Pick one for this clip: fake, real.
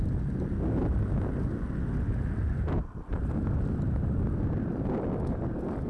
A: real